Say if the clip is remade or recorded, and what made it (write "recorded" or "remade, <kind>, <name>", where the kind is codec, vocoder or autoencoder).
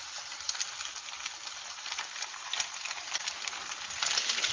recorded